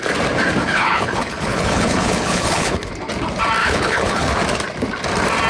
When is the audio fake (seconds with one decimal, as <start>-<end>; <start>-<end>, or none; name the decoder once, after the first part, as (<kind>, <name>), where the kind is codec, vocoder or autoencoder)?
0.6-2.9 (codec, HILCodec); 3.6-4.3